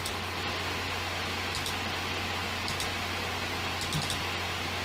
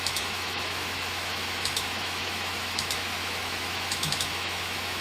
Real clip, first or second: first